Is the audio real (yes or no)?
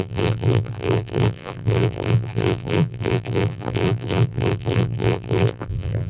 no